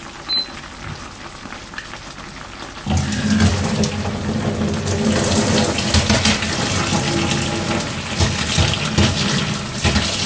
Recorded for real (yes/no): yes